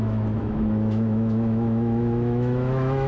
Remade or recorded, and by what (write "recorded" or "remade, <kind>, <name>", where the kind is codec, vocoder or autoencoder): remade, autoencoder, DAC-VAE